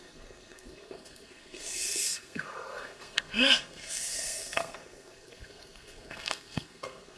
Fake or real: fake